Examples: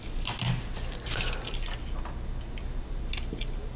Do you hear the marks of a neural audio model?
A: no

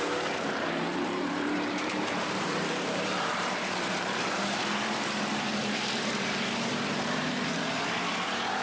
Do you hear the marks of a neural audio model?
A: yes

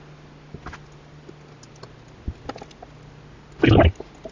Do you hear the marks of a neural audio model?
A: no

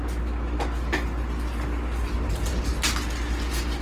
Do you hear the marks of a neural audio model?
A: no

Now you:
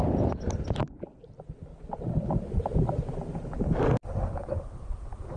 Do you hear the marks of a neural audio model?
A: no